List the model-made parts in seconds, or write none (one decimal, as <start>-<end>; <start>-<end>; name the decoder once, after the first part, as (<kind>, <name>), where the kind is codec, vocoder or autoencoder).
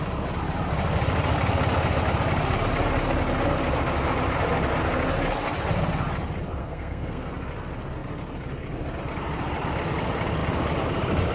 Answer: 6.6-7.3 (codec, SNAC)